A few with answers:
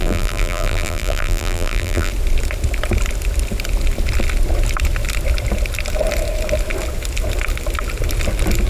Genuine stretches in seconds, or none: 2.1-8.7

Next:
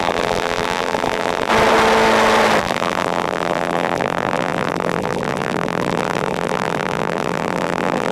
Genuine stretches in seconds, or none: 1.5-2.6